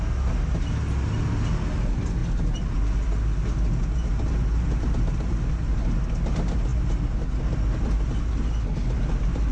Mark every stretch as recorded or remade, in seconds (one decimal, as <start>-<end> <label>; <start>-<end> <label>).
0.0-9.5 recorded